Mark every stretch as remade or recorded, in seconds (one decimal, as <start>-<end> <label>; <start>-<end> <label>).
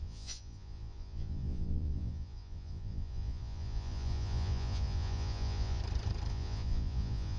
0.0-5.8 remade; 5.8-6.3 recorded; 6.3-7.4 remade